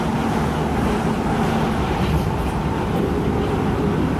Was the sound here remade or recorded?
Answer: recorded